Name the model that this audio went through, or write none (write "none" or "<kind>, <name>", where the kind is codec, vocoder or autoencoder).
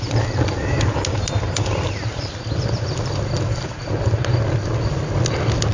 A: none